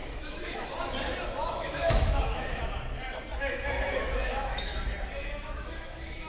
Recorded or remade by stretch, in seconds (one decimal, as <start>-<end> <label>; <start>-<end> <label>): 0.0-0.7 remade; 0.7-1.4 recorded; 1.4-2.6 remade; 2.6-3.4 recorded; 3.4-4.8 remade; 4.8-5.2 recorded; 5.2-6.3 remade

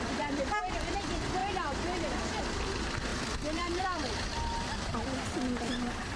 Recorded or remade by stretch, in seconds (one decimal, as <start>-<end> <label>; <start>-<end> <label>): 0.0-1.4 remade; 1.4-2.4 recorded; 2.4-6.2 remade

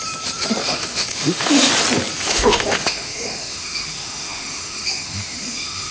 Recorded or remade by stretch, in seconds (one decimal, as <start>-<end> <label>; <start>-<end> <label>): 0.0-0.6 recorded; 0.6-1.7 remade; 1.7-2.2 recorded; 2.2-5.9 remade

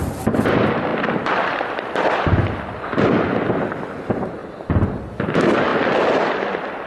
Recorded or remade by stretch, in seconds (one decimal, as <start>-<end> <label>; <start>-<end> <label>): 0.0-0.9 remade; 0.9-3.7 recorded; 3.7-4.4 remade; 4.4-5.0 recorded; 5.0-5.7 remade; 5.7-6.3 recorded; 6.3-6.9 remade

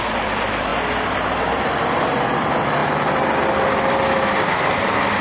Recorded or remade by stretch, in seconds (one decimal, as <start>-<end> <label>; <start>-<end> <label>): 0.0-0.7 remade; 0.7-1.6 recorded; 1.6-2.8 remade; 2.8-3.9 recorded; 3.9-5.2 remade